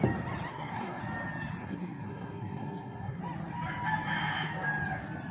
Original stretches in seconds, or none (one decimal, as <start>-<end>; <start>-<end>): 0.0-0.5; 1.0-1.6; 3.2-5.3